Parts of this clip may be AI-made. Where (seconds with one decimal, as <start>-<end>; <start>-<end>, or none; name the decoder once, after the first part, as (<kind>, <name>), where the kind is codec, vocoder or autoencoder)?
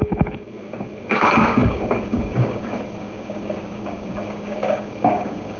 0.0-5.6 (codec, DAC)